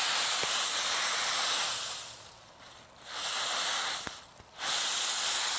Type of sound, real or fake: real